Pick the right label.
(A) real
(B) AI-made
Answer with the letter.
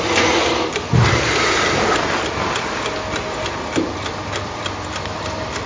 A